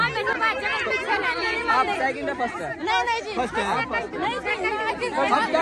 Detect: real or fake real